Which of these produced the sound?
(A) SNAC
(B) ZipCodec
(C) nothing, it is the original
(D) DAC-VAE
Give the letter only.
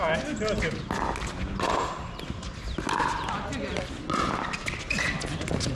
C